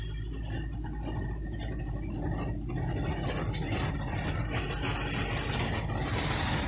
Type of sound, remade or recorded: recorded